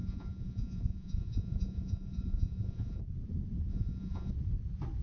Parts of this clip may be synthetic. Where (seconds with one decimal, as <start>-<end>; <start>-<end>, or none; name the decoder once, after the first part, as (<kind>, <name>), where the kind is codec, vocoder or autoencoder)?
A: 0.0-3.0 (vocoder, Vocos); 3.7-4.3